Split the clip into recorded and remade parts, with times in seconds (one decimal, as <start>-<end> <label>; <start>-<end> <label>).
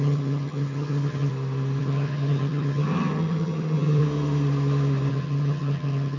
0.0-1.3 remade; 1.3-1.8 recorded; 1.8-4.0 remade; 4.0-5.1 recorded; 5.1-6.2 remade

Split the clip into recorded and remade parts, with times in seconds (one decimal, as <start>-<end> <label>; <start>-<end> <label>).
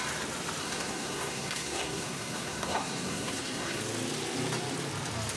0.0-0.6 recorded; 0.6-3.8 remade; 3.8-5.4 recorded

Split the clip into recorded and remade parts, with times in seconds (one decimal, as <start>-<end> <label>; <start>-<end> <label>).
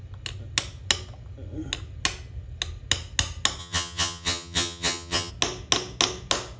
0.0-3.6 recorded; 3.6-5.3 remade; 5.3-6.6 recorded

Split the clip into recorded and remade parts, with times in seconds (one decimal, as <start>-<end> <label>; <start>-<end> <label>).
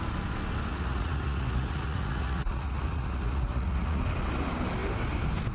0.0-0.7 recorded; 0.7-4.0 remade; 4.0-5.5 recorded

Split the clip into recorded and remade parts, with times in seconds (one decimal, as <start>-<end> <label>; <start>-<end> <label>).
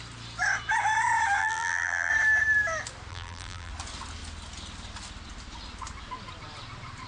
0.0-1.4 recorded; 1.4-2.1 remade; 2.1-3.1 recorded; 3.1-3.7 remade; 3.7-7.1 recorded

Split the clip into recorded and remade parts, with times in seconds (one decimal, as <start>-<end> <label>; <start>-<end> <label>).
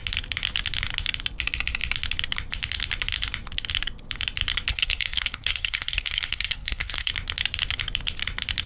0.0-4.7 recorded; 4.7-7.1 remade; 7.1-8.7 recorded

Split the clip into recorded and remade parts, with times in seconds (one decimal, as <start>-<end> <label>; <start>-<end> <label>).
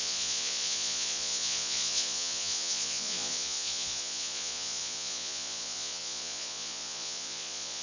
0.0-7.8 remade